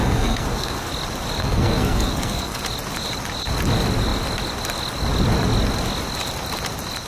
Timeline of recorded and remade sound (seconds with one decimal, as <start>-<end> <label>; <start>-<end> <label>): 0.0-0.9 remade; 0.9-1.4 recorded; 1.4-2.6 remade; 2.6-7.1 recorded